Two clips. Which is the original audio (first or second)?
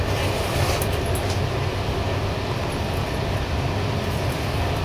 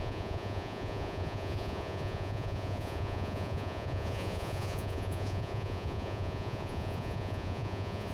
first